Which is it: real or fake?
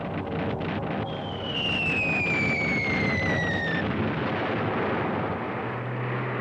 real